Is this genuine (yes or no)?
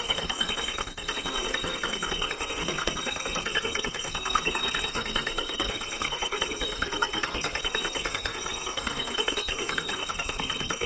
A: no